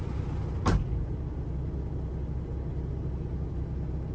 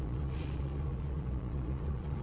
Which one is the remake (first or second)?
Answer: second